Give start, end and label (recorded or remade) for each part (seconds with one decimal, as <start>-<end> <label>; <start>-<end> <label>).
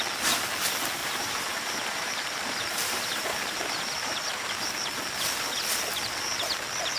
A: 0.0-1.0 recorded; 1.0-4.5 remade; 4.5-7.0 recorded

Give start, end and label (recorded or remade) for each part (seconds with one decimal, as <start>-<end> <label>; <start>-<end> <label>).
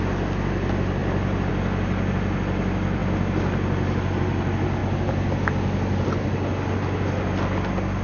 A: 0.0-8.0 recorded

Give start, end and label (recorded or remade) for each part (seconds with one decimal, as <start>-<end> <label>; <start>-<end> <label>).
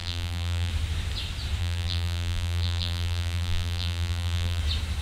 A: 0.0-0.7 remade; 0.7-1.6 recorded; 1.6-4.6 remade; 4.6-5.0 recorded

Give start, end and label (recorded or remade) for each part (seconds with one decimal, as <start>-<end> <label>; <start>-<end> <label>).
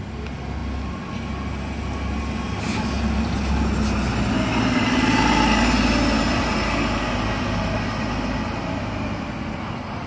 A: 0.0-10.1 recorded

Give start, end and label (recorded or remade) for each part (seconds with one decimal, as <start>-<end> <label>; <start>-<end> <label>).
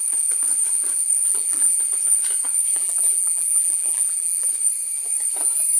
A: 0.0-1.3 recorded; 1.3-1.8 remade; 1.8-2.7 recorded; 2.7-4.5 remade; 4.5-5.8 recorded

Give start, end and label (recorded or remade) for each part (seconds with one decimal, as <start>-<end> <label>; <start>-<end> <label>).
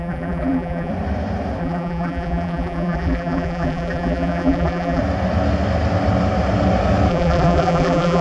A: 0.0-0.9 remade; 0.9-1.6 recorded; 1.6-5.0 remade; 5.0-7.1 recorded; 7.1-8.2 remade